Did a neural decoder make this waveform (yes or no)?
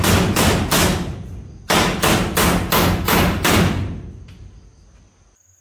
no